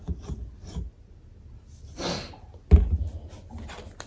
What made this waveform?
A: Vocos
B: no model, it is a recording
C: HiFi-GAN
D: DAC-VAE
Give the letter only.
B